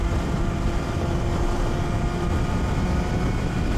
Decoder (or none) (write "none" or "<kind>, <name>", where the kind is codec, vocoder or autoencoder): none